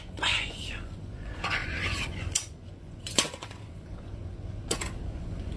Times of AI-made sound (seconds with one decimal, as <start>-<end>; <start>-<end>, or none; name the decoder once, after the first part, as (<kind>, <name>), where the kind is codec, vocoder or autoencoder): 0.0-5.6 (vocoder, Vocos)